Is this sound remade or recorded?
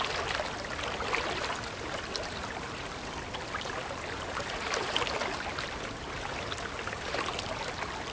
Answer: recorded